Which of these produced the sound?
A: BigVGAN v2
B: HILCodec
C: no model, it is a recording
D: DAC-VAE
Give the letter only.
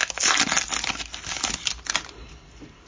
C